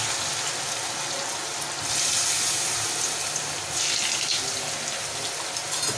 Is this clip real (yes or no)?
yes